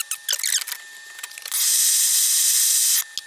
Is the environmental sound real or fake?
real